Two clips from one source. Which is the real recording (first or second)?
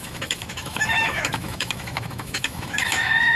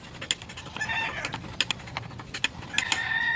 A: second